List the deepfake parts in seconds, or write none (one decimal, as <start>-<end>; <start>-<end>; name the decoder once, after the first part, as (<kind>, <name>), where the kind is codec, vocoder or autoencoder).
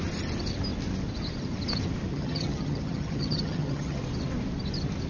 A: 2.1-4.0 (vocoder, HiFi-GAN)